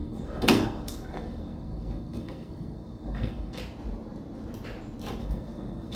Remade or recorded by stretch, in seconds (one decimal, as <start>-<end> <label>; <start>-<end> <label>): 0.0-3.6 remade; 3.6-5.2 recorded; 5.2-6.0 remade